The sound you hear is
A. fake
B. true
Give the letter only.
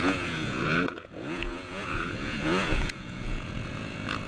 A